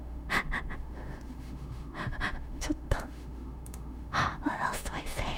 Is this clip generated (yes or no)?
yes